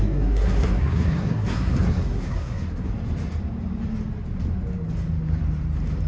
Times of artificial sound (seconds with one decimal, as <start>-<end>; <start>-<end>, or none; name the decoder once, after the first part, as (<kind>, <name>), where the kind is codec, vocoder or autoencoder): 0.0-2.9 (codec, SNAC)